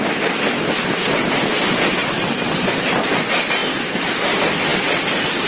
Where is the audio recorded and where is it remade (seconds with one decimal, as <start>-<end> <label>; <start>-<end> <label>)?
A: 0.0-5.5 recorded